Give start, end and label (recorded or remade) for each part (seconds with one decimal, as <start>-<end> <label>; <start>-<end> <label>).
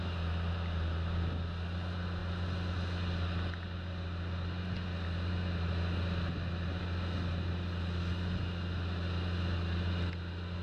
0.0-10.6 recorded